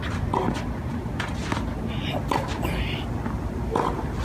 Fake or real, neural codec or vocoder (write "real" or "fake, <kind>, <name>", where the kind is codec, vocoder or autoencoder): real